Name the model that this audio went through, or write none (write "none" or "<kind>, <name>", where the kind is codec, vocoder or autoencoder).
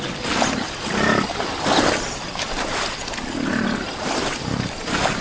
none